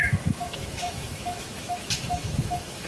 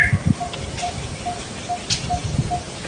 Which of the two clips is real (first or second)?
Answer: second